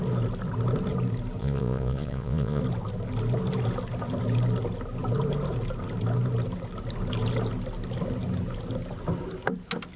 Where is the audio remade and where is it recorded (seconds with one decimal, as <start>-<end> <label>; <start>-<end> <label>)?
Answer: 0.0-1.4 recorded; 1.4-2.6 remade; 2.6-10.0 recorded